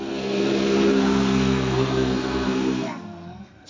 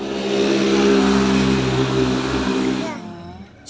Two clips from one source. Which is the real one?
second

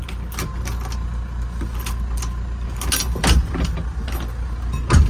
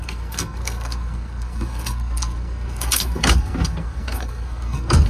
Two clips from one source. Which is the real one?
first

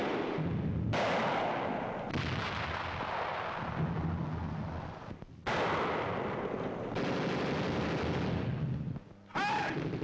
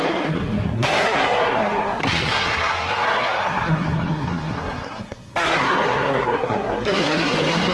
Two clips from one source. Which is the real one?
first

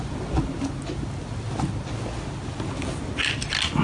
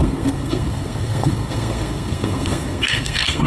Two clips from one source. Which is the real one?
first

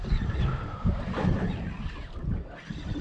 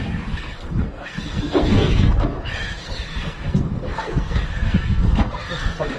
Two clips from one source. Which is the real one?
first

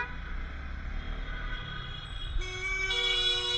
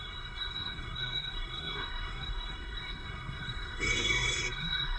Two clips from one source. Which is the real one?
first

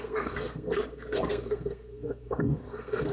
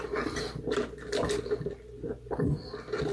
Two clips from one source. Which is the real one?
second